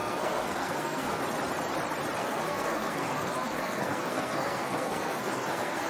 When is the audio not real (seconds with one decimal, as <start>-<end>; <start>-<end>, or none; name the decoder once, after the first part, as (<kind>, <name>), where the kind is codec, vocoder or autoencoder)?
0.0-1.2 (codec, SNAC); 2.2-5.9